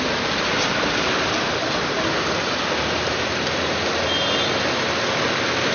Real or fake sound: real